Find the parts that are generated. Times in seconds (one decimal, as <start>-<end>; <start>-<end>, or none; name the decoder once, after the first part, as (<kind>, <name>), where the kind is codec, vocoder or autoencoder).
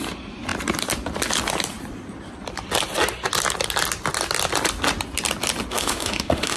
5.7-6.6 (autoencoder, DAC-VAE)